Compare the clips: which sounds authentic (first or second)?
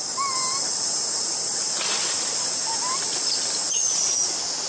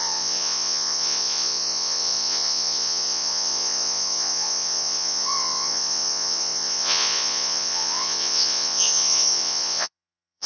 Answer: first